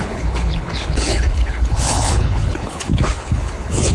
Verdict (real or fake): fake